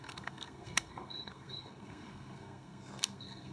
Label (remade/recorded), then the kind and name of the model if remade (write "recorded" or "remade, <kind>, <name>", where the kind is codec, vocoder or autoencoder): remade, codec, SNAC